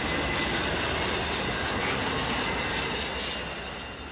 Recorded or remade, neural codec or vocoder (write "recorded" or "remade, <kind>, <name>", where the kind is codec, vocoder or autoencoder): recorded